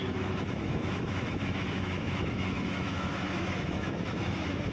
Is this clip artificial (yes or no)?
yes